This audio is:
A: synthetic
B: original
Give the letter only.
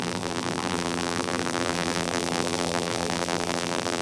A